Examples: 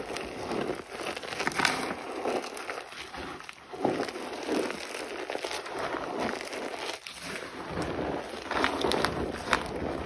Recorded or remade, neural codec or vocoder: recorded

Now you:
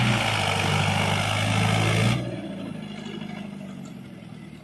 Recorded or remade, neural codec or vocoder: recorded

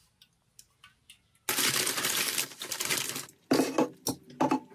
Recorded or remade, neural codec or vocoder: recorded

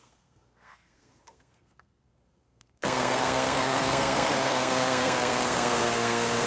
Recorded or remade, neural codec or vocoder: remade, codec, SNAC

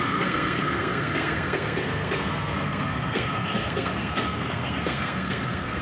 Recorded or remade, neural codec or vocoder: remade, codec, SNAC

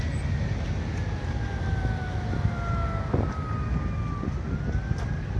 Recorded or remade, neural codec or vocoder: recorded